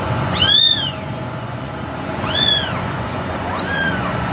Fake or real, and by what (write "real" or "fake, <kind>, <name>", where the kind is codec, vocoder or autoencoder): fake, vocoder, Vocos